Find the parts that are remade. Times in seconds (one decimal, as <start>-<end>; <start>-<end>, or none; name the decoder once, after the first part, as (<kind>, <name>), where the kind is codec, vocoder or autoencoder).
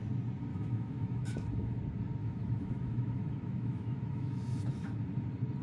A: 0.5-1.8 (autoencoder, DAC-VAE); 2.2-4.9